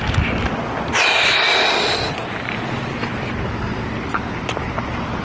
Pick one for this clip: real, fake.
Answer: real